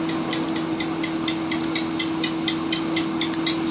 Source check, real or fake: real